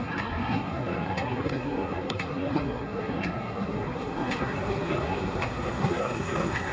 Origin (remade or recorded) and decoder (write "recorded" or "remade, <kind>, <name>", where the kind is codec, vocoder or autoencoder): remade, codec, SNAC